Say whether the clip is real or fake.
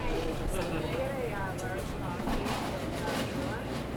real